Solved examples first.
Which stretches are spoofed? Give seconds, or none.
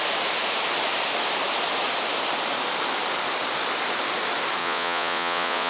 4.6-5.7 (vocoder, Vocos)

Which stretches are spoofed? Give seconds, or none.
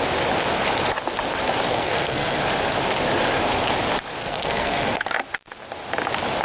1.7-2.4 (codec, SNAC); 4.2-5.1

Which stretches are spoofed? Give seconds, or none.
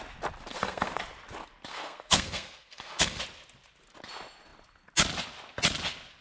0.5-1.0 (codec, SNAC); 1.7-3.2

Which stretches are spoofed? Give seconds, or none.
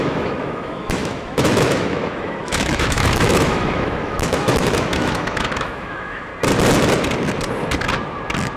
0.0-6.3 (autoencoder, DAC-VAE)